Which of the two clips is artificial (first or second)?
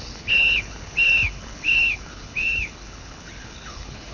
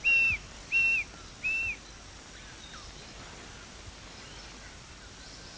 first